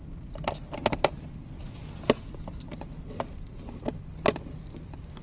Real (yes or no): yes